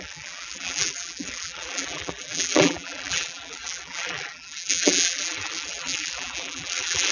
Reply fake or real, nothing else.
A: fake